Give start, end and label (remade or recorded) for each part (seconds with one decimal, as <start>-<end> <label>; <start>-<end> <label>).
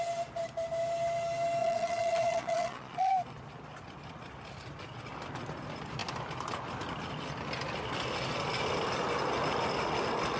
0.0-1.6 recorded; 1.6-3.1 remade; 3.1-10.4 recorded